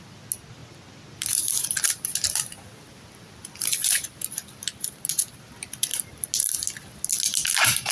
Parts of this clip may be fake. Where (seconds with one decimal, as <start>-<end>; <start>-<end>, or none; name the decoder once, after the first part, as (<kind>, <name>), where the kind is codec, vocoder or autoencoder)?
none